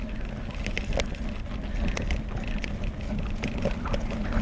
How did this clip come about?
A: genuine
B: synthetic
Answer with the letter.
A